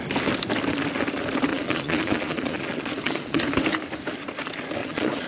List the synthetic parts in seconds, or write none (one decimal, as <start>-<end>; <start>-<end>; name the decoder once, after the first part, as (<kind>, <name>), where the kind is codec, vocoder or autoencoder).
1.5-3.4 (vocoder, Vocos); 4.8-5.3

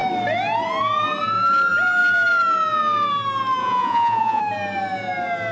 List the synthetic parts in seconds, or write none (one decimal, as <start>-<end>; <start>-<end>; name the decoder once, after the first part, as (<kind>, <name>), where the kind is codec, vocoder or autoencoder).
3.6-4.4 (vocoder, Vocos)

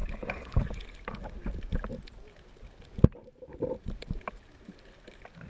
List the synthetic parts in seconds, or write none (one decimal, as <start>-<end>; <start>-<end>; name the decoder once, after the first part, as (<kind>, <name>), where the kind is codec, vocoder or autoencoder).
0.0-0.6 (codec, HILCodec)

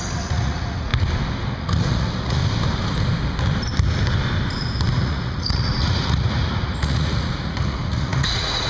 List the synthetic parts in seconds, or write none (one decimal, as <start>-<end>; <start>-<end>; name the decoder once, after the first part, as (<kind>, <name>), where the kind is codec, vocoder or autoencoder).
0.0-0.9 (vocoder, Vocos); 1.5-2.4; 4.9-8.7

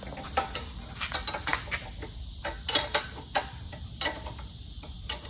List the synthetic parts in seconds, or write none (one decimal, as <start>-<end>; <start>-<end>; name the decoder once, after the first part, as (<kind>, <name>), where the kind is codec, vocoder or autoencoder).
0.0-5.3 (vocoder, BigVGAN v2)

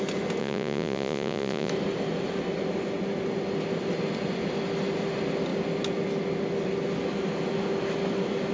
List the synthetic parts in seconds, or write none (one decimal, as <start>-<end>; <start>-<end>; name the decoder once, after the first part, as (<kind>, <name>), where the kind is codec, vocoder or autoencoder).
0.4-1.7 (vocoder, Vocos)